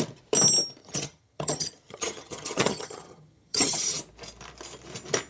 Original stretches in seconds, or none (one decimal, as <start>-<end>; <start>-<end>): 0.0-0.8; 4.0-5.3